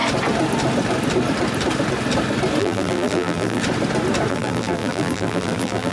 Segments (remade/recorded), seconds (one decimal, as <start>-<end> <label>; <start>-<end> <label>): 0.0-2.6 recorded; 2.6-3.6 remade; 3.6-4.3 recorded; 4.3-5.9 remade